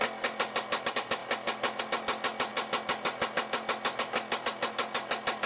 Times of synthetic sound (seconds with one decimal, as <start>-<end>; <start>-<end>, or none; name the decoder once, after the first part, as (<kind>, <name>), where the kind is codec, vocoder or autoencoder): none

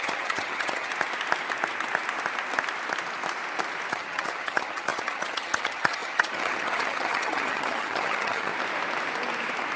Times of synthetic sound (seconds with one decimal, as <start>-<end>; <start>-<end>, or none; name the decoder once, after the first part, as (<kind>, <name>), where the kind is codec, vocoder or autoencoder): 0.0-0.9 (vocoder, HiFi-GAN); 3.9-8.5

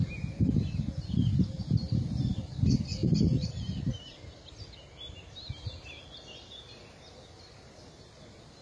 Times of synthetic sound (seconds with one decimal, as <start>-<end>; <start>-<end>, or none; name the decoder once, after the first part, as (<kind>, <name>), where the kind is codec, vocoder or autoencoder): 1.8-2.4 (vocoder, BigVGAN v2)

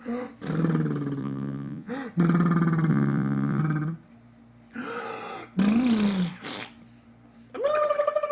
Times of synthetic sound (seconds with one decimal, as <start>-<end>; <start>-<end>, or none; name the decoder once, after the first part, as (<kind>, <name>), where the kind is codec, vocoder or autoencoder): 1.2-1.9 (vocoder, Vocos); 2.9-3.6

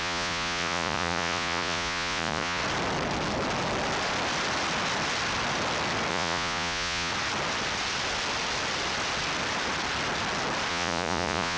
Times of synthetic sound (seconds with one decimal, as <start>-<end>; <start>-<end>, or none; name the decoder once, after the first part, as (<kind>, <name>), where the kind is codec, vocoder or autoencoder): 0.0-2.6 (vocoder, Vocos); 6.1-7.1; 10.7-11.6

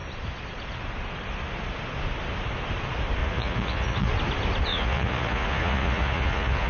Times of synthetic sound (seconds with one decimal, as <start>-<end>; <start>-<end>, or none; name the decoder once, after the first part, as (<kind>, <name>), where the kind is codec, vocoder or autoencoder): 3.2-4.1 (vocoder, Vocos); 4.7-6.7

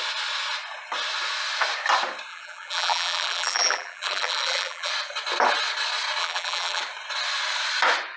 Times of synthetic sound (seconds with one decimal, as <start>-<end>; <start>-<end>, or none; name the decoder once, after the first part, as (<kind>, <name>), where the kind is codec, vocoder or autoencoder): 2.3-4.9 (vocoder, BigVGAN v2); 6.2-6.8